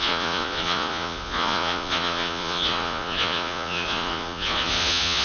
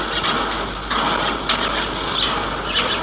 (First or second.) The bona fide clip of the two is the second